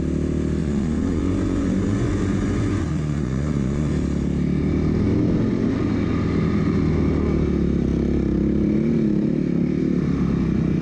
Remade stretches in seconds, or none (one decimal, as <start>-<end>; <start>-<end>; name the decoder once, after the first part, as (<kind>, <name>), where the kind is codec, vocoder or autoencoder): 0.6-3.9 (vocoder, Vocos)